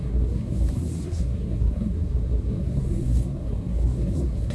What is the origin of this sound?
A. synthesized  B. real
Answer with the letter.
A